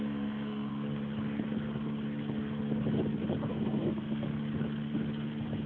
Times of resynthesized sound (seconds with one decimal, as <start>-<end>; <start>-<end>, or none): 0.0-0.7; 3.5-4.3